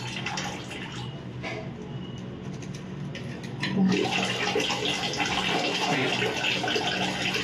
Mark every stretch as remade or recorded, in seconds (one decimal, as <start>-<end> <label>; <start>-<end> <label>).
0.0-5.5 recorded; 5.5-6.1 remade; 6.1-7.4 recorded